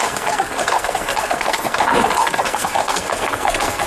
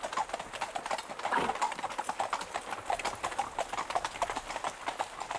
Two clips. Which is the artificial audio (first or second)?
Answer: first